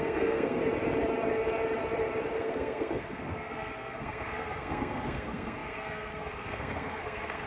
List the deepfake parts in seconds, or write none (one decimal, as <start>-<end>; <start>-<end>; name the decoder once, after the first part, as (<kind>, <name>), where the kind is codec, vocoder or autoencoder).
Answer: 0.0-0.6 (codec, SNAC); 2.4-7.5